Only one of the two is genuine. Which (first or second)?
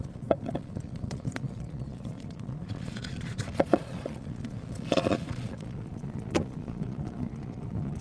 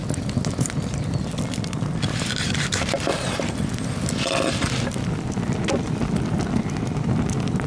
second